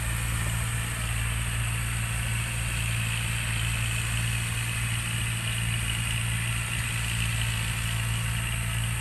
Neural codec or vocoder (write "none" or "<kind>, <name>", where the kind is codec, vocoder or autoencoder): none